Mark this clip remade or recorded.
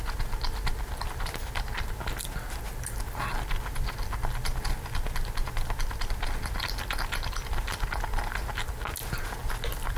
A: recorded